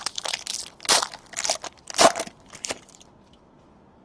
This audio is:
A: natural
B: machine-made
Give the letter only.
B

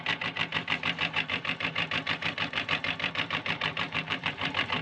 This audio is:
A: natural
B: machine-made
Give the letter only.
B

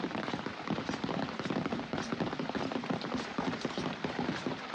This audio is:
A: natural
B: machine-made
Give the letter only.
B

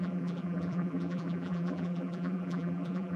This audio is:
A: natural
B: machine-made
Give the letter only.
B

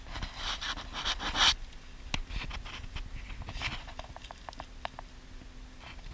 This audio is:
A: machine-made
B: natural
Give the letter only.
B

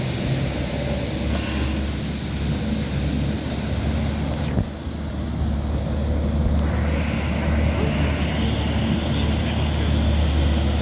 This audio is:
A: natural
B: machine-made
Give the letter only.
A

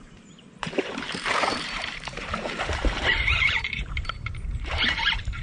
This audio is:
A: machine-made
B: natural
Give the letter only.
A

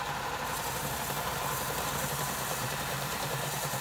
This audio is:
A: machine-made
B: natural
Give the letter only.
A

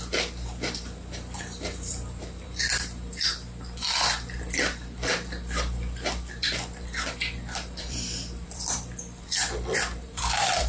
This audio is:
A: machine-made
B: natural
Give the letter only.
A